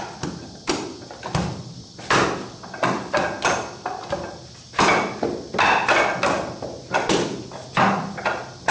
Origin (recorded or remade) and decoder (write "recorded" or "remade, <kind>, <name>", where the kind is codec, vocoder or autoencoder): recorded